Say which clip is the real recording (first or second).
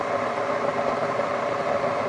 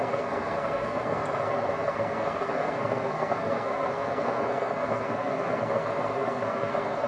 first